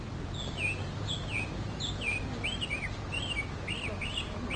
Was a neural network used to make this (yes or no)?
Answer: no